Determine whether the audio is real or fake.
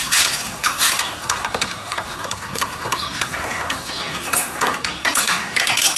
fake